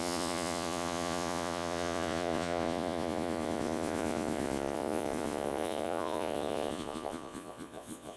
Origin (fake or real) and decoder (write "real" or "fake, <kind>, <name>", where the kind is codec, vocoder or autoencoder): fake, vocoder, Vocos